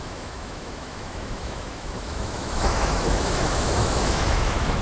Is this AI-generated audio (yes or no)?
yes